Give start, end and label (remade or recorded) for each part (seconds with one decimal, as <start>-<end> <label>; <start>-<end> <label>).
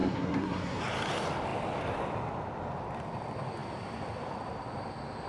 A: 0.0-0.8 remade; 0.8-5.3 recorded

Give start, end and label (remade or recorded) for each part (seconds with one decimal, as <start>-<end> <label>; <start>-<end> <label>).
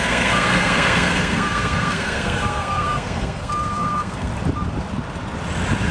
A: 0.0-4.3 remade; 4.3-5.9 recorded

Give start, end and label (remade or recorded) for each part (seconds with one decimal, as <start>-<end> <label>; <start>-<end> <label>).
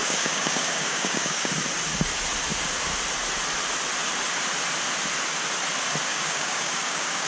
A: 0.0-1.5 remade; 1.5-6.1 recorded; 6.1-7.3 remade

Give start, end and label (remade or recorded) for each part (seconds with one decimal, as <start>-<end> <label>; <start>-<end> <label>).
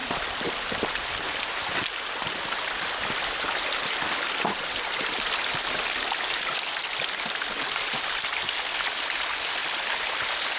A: 0.0-10.6 recorded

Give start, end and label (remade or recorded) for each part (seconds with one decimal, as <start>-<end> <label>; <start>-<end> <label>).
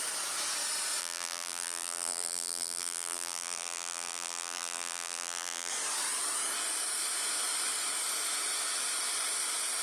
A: 0.0-1.0 recorded; 1.0-5.7 remade; 5.7-9.8 recorded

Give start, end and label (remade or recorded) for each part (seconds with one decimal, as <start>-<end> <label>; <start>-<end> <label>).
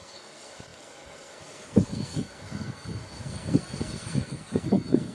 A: 0.0-5.1 remade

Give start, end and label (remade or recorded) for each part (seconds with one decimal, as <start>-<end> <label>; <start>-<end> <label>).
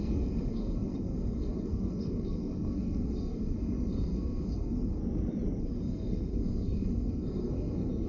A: 0.0-5.0 remade; 5.0-5.6 recorded; 5.6-8.1 remade